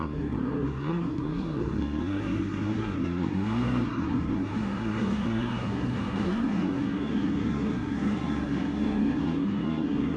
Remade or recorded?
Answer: remade